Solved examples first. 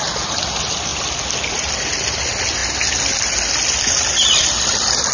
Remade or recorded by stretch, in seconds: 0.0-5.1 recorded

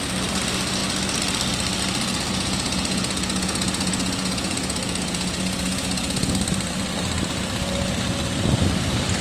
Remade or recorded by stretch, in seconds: 0.0-2.3 recorded; 2.3-6.3 remade; 6.3-9.2 recorded

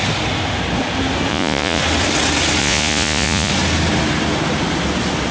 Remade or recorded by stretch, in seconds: 0.0-1.3 recorded; 1.3-1.8 remade; 1.8-2.6 recorded; 2.6-3.5 remade; 3.5-5.3 recorded

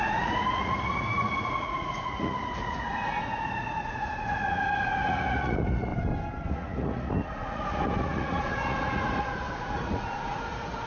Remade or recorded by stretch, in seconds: 0.0-5.9 remade; 5.9-6.5 recorded; 6.5-10.9 remade